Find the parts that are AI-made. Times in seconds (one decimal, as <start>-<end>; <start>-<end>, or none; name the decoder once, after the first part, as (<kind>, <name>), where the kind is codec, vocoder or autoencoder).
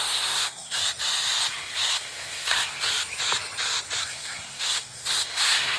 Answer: 0.0-0.8 (codec, SNAC); 1.5-2.9; 4.0-5.8